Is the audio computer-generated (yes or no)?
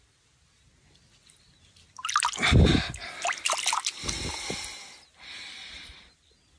no